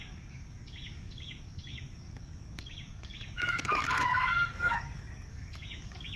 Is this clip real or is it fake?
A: fake